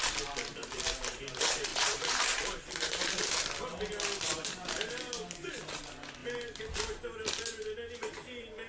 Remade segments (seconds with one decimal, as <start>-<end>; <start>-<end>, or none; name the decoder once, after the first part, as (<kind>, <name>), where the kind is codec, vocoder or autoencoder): 1.7-3.1 (vocoder, BigVGAN v2)